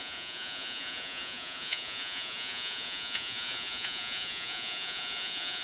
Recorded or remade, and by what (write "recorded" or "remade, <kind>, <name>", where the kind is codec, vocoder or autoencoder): remade, vocoder, Vocos